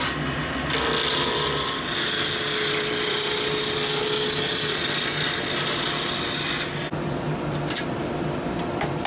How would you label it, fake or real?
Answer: real